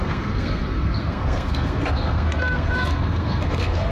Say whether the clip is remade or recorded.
remade